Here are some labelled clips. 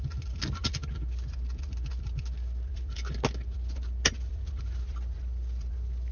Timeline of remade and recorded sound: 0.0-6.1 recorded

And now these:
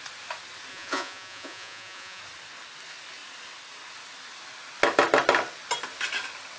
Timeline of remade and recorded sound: 0.0-0.7 recorded; 0.7-2.2 remade; 2.2-6.6 recorded

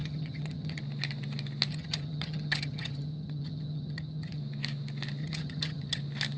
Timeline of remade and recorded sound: 0.0-0.8 remade; 0.8-1.7 recorded; 1.7-4.4 remade; 4.4-5.2 recorded; 5.2-6.0 remade; 6.0-6.4 recorded